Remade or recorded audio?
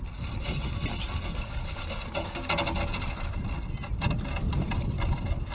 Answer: recorded